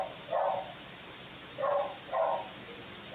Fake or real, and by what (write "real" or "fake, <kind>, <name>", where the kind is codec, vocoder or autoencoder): real